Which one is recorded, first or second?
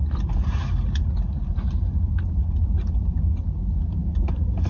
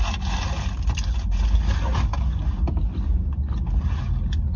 second